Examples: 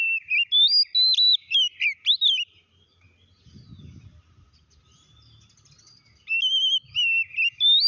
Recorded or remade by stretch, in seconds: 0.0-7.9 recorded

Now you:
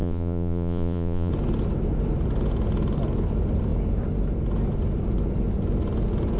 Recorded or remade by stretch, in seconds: 0.0-1.3 remade; 1.3-6.4 recorded

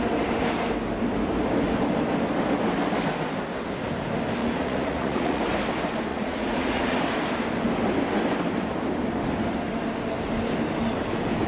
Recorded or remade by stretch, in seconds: 0.0-4.4 recorded; 4.4-5.4 remade; 5.4-6.1 recorded; 6.1-7.0 remade; 7.0-11.5 recorded

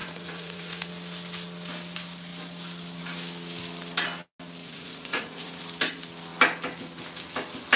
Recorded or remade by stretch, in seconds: 0.0-0.9 remade; 0.9-4.6 recorded; 4.6-5.6 remade; 5.6-7.8 recorded

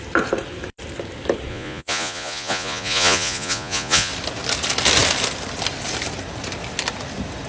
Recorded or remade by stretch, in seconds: 0.0-1.5 recorded; 1.5-4.1 remade; 4.1-7.5 recorded